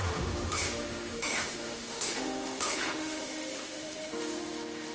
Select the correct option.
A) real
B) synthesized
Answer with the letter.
B